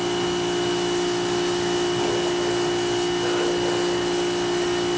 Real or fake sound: real